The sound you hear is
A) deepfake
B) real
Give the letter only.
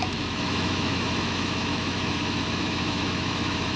A